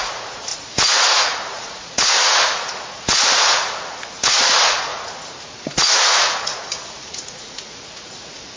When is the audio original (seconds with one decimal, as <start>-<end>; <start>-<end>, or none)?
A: none

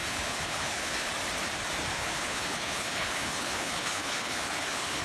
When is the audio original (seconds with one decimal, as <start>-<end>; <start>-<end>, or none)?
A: 1.1-1.9

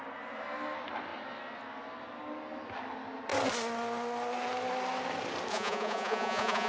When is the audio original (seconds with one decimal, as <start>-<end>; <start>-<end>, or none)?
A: 0.0-5.5

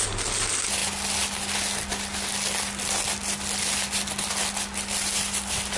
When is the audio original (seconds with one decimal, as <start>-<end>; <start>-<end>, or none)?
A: 0.0-5.8

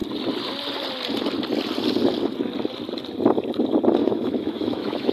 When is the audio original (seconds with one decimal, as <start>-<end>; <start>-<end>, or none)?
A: 0.0-4.0